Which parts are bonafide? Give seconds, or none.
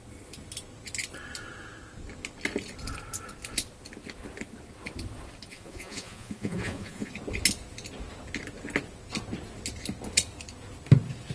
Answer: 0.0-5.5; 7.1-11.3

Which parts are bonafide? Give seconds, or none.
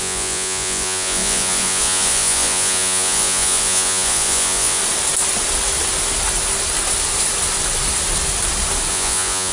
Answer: 4.8-8.9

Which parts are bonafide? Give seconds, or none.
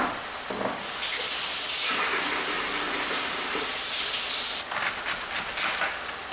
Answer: 0.0-6.3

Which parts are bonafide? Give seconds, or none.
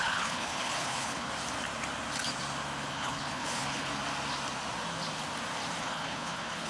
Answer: 1.3-2.9; 3.9-5.8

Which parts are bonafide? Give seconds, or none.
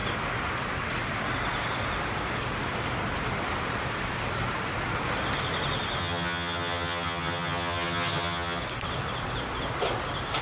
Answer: 0.0-6.0; 8.6-10.4